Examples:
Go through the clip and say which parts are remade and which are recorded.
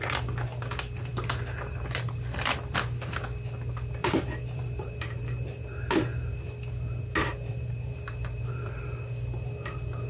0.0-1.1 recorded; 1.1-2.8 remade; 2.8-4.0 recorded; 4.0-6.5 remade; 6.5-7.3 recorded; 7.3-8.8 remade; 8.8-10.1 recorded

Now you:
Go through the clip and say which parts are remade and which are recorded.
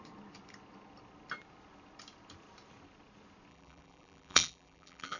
0.0-3.5 recorded; 3.5-5.2 remade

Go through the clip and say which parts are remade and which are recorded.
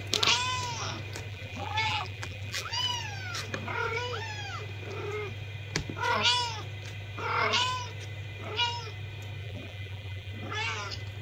0.0-1.3 recorded; 1.3-2.8 remade; 2.8-9.4 recorded; 9.4-10.3 remade; 10.3-11.2 recorded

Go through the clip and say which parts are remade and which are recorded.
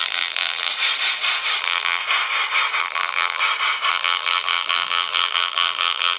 0.0-0.7 remade; 0.7-1.6 recorded; 1.6-2.0 remade; 2.0-2.8 recorded; 2.8-3.4 remade; 3.4-3.9 recorded; 3.9-6.2 remade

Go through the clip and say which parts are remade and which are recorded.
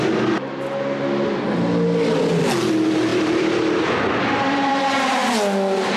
0.0-3.1 recorded; 3.1-4.8 remade; 4.8-6.0 recorded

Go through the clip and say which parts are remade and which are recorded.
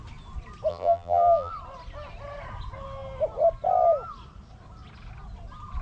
0.0-0.7 recorded; 0.7-1.5 remade; 1.5-5.8 recorded